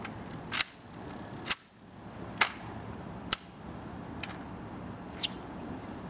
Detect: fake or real real